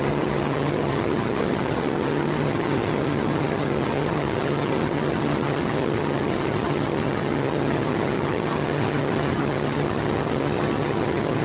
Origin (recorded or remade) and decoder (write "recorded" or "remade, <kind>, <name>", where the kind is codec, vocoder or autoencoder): remade, vocoder, HiFi-GAN